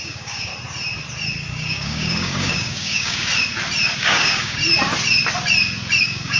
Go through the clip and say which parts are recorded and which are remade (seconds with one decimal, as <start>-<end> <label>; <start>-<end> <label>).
0.0-0.5 remade; 0.5-1.5 recorded; 1.5-3.3 remade; 3.3-4.0 recorded; 4.0-4.6 remade; 4.6-6.0 recorded; 6.0-6.4 remade